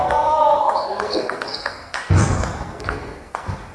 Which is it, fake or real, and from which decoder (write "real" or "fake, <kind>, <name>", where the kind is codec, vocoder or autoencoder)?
fake, codec, SNAC